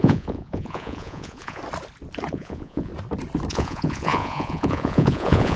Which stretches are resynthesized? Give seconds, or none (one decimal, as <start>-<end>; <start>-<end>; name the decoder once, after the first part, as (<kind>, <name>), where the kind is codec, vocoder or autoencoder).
0.0-1.6 (vocoder, Vocos); 2.3-2.9; 3.5-5.6